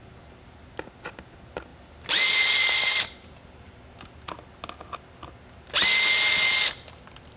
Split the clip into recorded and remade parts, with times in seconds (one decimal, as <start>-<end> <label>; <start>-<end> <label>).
0.0-1.7 recorded; 1.7-3.6 remade; 3.6-7.4 recorded